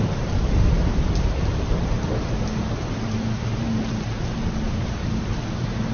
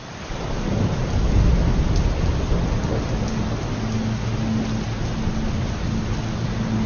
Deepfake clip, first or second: first